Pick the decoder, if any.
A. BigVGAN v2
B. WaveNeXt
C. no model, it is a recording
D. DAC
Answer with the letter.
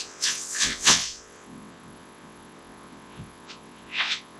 B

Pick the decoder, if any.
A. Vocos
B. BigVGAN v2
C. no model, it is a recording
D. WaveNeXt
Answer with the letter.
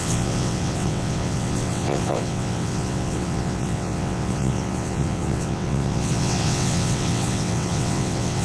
D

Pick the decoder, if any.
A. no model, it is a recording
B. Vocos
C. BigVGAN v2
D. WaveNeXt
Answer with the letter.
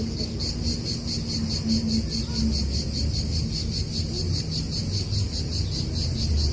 A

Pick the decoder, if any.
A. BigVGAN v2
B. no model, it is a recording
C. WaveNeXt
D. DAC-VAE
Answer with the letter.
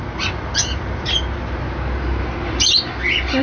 B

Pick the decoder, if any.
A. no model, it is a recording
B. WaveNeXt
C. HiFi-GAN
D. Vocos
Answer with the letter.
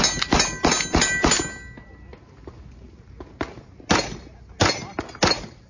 A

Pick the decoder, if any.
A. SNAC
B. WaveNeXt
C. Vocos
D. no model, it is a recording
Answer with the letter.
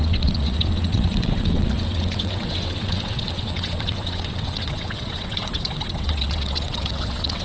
B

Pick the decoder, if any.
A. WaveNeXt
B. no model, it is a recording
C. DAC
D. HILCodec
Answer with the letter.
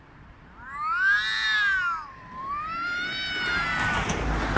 B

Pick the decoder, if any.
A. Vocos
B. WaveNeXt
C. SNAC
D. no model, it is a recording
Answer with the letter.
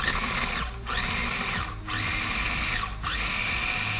D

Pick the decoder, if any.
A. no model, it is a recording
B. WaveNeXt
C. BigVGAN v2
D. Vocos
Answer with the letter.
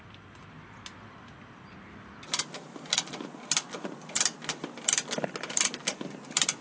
A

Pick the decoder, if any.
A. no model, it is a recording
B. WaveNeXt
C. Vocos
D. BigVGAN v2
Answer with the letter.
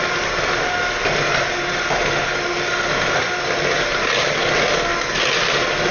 A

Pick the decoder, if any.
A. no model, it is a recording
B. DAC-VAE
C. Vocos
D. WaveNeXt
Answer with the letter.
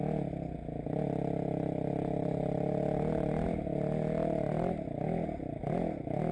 A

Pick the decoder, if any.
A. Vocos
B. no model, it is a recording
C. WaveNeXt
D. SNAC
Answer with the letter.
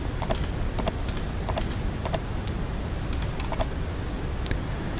B